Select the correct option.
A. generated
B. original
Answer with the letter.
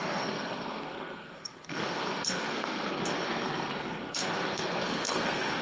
A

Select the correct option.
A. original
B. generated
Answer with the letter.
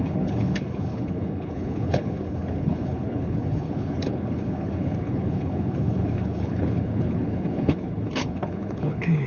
B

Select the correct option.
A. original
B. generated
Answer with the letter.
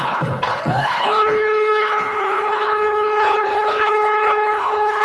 B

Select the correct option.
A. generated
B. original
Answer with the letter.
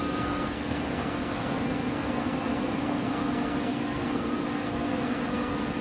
A